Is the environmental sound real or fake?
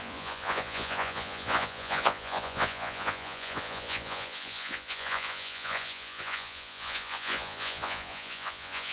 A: fake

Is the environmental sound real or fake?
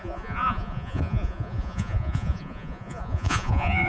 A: fake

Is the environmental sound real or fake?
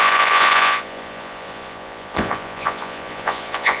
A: fake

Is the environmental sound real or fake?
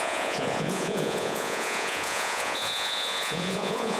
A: fake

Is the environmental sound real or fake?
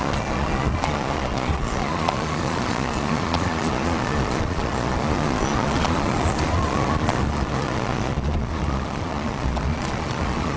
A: fake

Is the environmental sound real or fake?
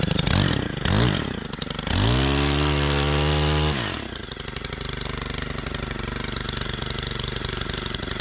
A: real